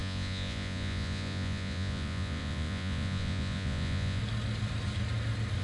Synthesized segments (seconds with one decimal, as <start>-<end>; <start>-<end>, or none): 0.0-4.2